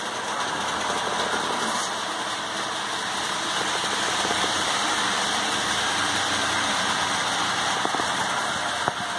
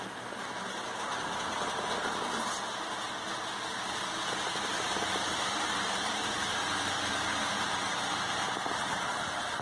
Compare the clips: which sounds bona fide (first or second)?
second